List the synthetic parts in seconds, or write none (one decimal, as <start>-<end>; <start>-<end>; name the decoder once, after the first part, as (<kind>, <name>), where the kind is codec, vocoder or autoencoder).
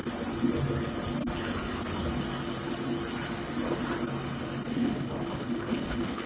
4.7-6.3 (codec, HILCodec)